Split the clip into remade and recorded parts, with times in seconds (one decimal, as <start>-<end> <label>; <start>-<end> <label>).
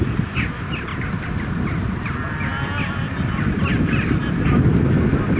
0.0-5.4 recorded